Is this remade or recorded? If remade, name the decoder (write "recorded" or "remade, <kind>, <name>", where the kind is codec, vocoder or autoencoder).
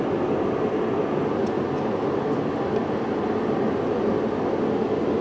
recorded